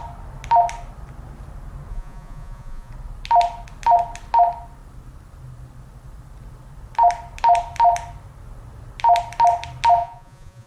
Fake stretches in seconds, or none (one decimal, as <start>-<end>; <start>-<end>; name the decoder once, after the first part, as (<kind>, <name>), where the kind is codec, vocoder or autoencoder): 1.9-2.9 (vocoder, Vocos); 10.0-10.7